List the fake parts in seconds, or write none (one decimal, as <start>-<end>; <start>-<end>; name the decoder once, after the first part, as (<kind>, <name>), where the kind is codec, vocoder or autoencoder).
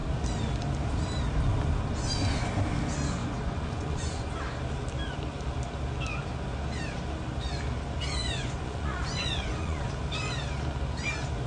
3.2-4.3 (vocoder, Vocos); 8.2-9.9